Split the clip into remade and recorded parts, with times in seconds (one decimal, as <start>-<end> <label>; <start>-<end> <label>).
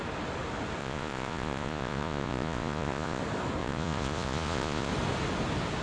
0.0-0.8 recorded; 0.8-3.2 remade; 3.2-3.6 recorded; 3.6-4.9 remade; 4.9-5.8 recorded